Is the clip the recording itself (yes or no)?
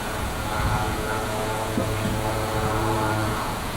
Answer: no